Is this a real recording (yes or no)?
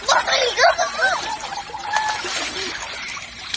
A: no